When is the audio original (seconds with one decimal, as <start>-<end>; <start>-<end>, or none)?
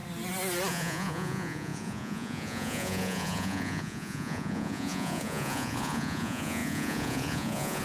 0.0-0.7